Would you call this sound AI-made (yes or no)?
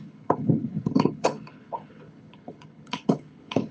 yes